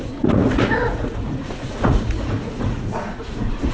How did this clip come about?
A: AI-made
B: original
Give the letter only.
A